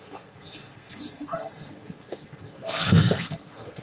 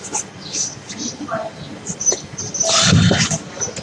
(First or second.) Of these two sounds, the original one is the second